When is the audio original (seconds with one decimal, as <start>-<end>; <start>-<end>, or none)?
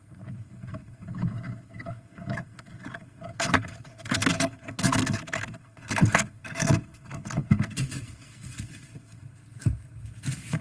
none